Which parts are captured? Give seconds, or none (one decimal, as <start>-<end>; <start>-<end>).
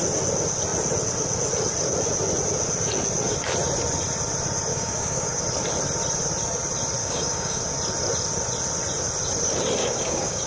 0.0-4.7; 5.4-7.0; 7.6-9.8